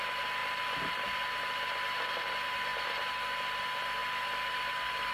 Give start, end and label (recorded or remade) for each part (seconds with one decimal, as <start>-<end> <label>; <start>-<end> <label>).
0.0-5.1 recorded